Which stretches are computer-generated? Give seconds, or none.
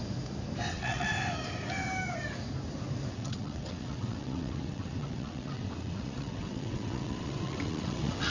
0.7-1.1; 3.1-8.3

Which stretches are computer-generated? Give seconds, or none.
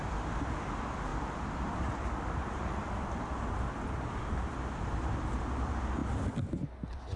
none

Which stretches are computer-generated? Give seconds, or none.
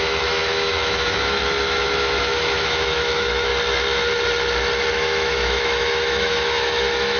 0.0-3.5; 4.9-7.2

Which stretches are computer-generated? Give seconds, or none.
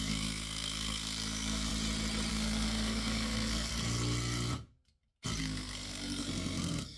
0.0-1.7; 2.3-3.7; 5.4-7.0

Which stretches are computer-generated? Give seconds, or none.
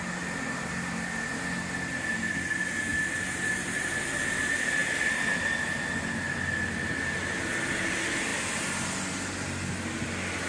none